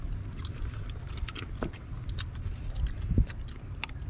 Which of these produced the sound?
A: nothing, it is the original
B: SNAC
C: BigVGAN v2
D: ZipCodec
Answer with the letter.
A